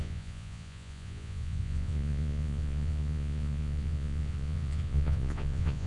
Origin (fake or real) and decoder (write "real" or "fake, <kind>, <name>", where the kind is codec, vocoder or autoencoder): fake, vocoder, Vocos